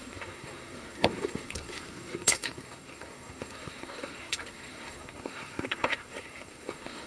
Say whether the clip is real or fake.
fake